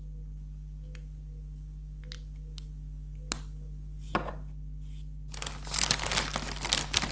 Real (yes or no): yes